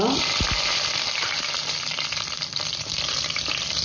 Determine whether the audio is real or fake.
fake